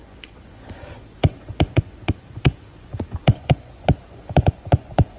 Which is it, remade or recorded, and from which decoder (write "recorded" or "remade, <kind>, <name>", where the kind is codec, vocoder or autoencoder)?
remade, vocoder, Vocos